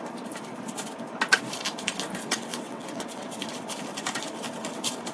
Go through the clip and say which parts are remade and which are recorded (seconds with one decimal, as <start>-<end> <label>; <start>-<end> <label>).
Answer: 0.0-2.2 recorded; 2.2-3.4 remade; 3.4-5.1 recorded